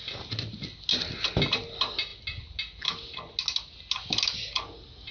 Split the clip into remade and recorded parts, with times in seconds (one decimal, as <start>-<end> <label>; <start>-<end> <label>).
0.0-5.1 recorded